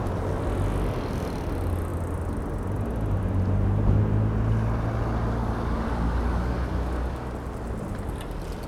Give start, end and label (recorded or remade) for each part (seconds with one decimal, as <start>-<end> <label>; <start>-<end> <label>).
0.0-5.4 recorded; 5.4-7.3 remade; 7.3-8.7 recorded